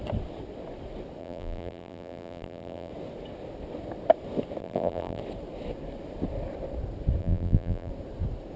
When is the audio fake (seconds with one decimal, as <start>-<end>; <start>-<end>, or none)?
1.2-2.9; 4.6-5.2; 7.2-7.9